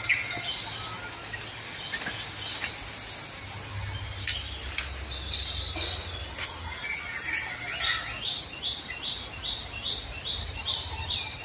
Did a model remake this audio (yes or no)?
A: no